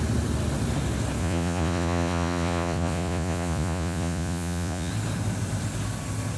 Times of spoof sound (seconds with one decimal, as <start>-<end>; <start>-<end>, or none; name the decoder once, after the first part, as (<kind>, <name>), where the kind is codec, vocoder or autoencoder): 1.2-4.9 (vocoder, Vocos)